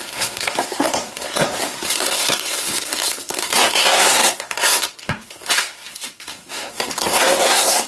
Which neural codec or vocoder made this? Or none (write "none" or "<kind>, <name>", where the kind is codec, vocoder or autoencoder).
codec, SNAC